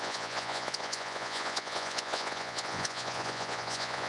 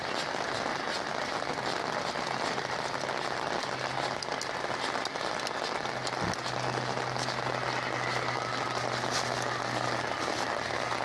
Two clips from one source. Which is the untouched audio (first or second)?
second